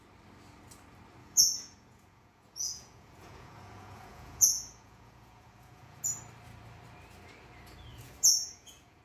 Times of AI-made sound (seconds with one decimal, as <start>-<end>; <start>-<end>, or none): 1.2-6.0; 7.9-9.0